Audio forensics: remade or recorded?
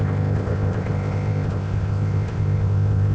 remade